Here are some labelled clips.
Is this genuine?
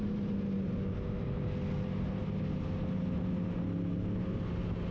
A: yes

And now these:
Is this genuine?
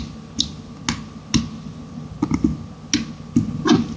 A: yes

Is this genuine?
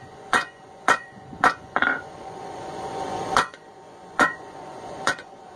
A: no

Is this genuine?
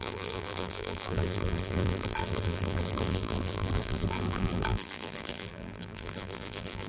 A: no